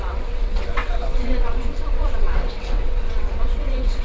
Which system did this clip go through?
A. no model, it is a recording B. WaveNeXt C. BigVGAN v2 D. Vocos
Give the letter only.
B